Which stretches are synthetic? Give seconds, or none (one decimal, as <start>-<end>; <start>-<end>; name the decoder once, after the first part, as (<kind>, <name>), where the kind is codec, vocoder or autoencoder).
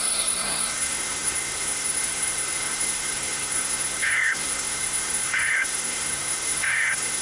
0.0-7.2 (codec, SNAC)